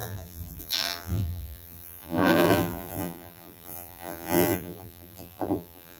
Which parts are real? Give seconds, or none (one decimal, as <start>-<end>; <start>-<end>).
none